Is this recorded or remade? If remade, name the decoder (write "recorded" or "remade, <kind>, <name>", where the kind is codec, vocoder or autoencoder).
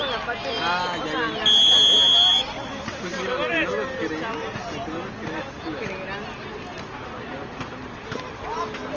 recorded